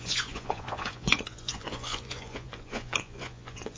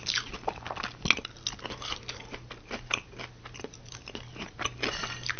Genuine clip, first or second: second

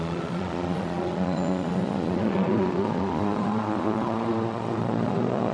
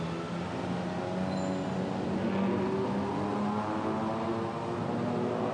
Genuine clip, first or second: second